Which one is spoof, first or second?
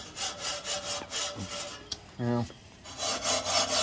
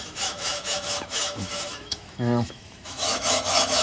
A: second